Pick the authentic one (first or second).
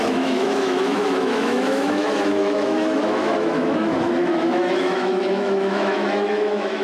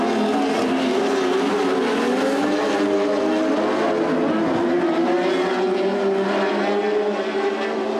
second